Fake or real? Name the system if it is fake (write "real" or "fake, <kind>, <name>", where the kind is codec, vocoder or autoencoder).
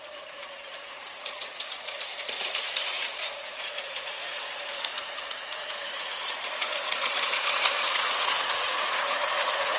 fake, vocoder, Vocos